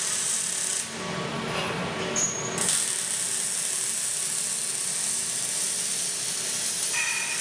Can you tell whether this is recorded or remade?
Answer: recorded